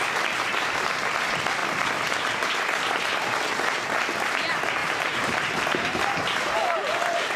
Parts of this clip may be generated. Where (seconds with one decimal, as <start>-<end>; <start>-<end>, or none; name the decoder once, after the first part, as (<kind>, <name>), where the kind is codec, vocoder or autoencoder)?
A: 4.8-7.4 (vocoder, BigVGAN v2)